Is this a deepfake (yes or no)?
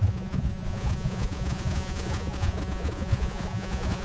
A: yes